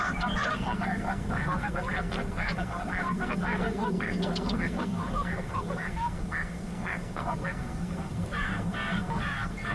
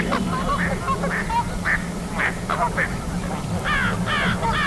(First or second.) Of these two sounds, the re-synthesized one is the first